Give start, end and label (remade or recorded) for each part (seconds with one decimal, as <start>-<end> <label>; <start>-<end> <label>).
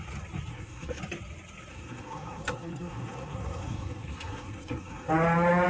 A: 0.0-0.5 recorded; 0.5-1.0 remade; 1.0-1.7 recorded; 1.7-5.1 remade; 5.1-5.7 recorded